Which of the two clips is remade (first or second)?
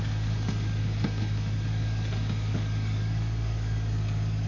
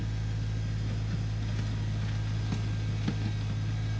first